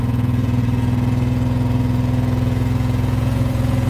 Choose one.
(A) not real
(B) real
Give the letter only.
A